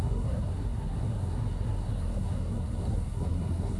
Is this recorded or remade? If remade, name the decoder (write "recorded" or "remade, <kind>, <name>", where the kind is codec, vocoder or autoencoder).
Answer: remade, codec, SNAC